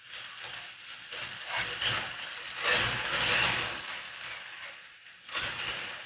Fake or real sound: real